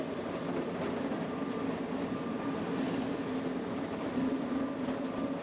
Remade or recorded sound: recorded